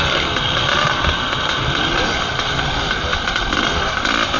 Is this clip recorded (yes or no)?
yes